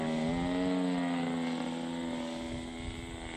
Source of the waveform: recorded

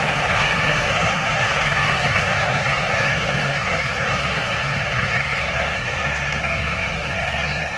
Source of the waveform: remade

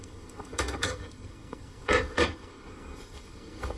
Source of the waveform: remade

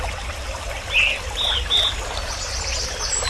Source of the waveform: recorded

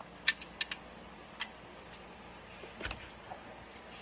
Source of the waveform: recorded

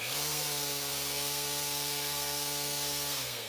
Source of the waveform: remade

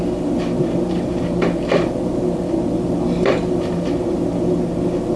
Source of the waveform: recorded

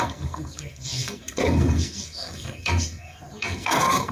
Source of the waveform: remade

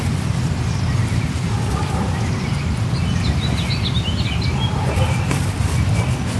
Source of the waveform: recorded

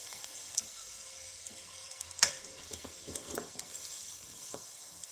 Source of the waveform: remade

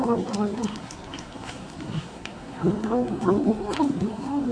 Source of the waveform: remade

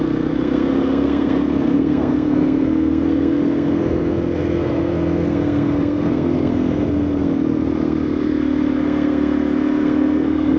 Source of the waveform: remade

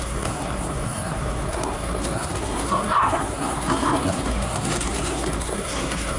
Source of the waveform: remade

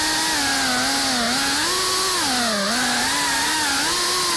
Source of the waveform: recorded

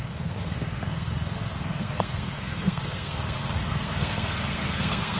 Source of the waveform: remade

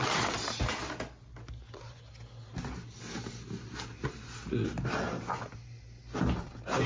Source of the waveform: recorded